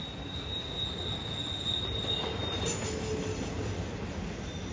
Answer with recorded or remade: recorded